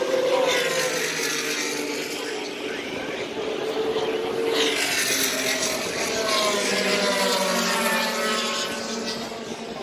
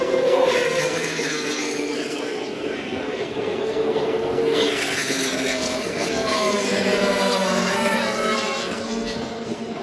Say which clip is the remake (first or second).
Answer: second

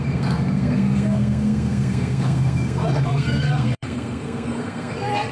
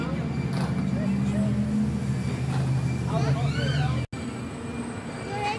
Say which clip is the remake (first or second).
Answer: first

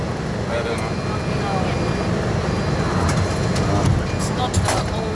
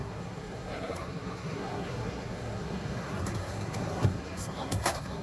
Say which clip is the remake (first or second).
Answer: second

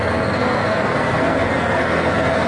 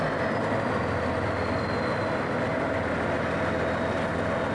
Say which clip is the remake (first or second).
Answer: first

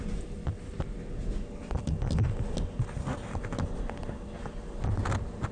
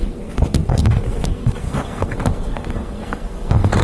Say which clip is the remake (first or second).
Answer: second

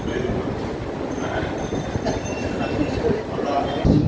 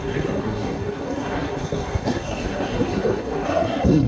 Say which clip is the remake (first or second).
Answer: second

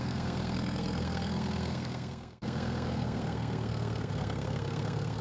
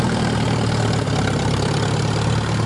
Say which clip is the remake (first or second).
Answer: first